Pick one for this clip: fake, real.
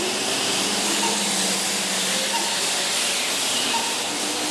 real